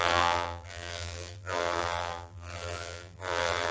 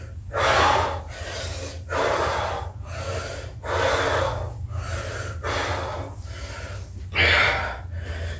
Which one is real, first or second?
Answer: second